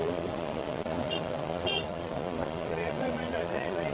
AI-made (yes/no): yes